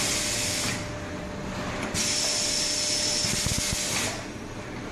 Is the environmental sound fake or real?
real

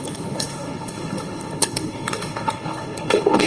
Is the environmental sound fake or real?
fake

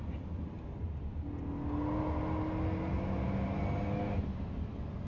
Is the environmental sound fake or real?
real